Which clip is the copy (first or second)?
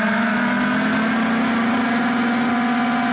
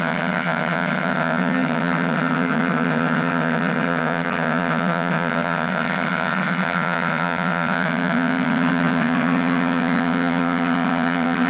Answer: second